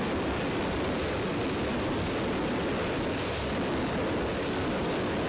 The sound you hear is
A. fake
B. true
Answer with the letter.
B